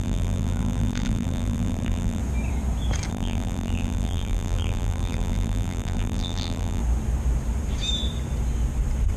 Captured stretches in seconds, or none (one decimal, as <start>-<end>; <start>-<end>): 2.2-3.1; 6.8-9.2